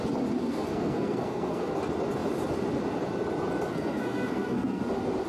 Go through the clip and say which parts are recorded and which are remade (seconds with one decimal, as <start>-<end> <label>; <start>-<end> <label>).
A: 0.0-0.4 recorded; 0.4-1.7 remade; 1.7-3.7 recorded; 3.7-4.8 remade; 4.8-5.3 recorded